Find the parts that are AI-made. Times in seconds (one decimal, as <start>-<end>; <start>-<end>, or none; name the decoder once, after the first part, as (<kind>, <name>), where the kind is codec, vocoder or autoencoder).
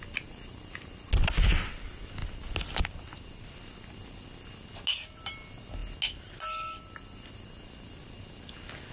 none